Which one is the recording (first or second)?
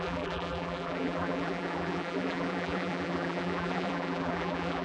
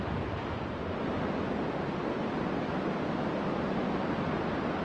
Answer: second